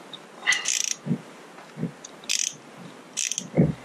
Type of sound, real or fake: real